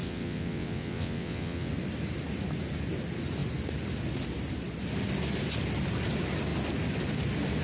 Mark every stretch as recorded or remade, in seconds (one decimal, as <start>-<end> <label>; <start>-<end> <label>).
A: 0.0-1.7 remade; 1.7-7.6 recorded

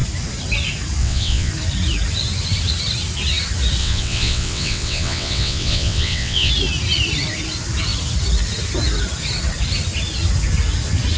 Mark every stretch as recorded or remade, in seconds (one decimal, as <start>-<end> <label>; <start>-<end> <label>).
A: 0.0-1.0 recorded; 1.0-1.5 remade; 1.5-3.8 recorded; 3.8-6.5 remade; 6.5-11.2 recorded

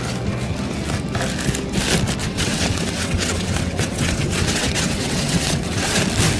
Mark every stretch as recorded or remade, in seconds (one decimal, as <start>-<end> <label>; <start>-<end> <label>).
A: 0.0-2.2 recorded; 2.2-6.0 remade; 6.0-6.4 recorded

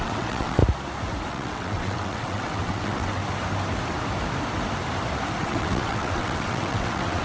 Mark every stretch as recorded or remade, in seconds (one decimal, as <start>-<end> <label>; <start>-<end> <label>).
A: 0.0-0.6 remade; 0.6-1.3 recorded; 1.3-3.2 remade; 3.2-5.4 recorded; 5.4-7.2 remade

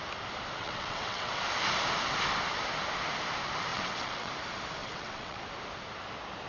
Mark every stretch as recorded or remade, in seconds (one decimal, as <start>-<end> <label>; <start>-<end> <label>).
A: 0.0-0.6 recorded; 0.6-1.4 remade; 1.4-3.7 recorded; 3.7-4.3 remade; 4.3-4.8 recorded; 4.8-5.4 remade; 5.4-6.5 recorded

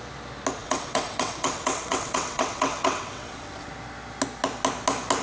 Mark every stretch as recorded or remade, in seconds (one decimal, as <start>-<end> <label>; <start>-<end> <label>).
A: 0.0-0.6 recorded; 0.6-3.7 remade; 3.7-5.2 recorded

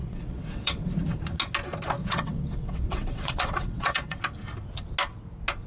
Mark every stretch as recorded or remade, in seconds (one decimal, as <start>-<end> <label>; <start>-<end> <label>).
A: 0.0-0.9 remade; 0.9-2.0 recorded; 2.0-4.2 remade; 4.2-5.7 recorded

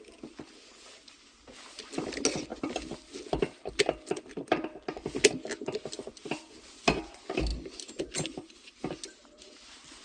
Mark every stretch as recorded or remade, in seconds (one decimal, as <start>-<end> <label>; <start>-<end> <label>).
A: 0.0-10.0 recorded